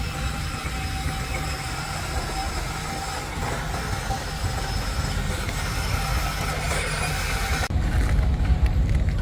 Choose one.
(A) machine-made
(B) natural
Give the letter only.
B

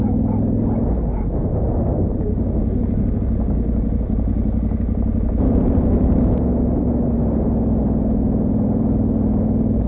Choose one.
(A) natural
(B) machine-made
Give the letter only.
A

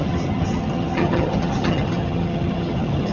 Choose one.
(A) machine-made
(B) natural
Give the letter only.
A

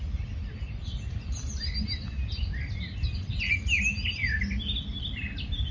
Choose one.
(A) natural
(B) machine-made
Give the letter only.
A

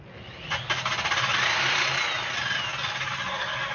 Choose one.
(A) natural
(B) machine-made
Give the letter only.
A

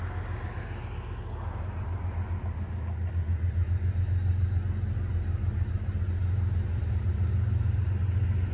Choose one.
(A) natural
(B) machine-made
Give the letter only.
A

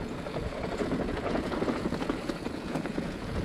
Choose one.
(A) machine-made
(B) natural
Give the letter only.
A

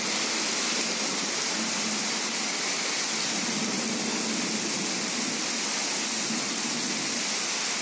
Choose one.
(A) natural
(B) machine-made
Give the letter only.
A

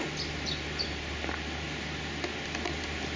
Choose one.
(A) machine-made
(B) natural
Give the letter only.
B